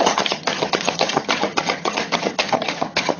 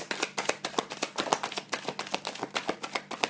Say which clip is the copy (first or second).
first